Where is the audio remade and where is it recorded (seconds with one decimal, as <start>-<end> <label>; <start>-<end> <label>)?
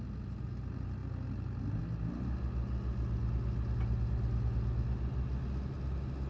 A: 0.0-6.3 recorded